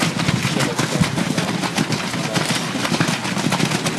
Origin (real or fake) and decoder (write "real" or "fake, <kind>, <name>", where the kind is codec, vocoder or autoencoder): real